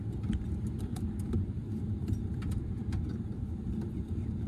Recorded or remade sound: remade